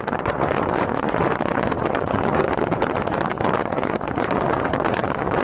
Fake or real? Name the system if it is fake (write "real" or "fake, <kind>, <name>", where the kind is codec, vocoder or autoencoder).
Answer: fake, vocoder, Vocos